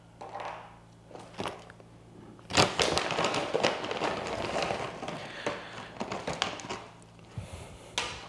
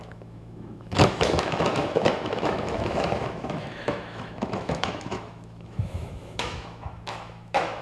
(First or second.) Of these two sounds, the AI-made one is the second